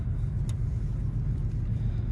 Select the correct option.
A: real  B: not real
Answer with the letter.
A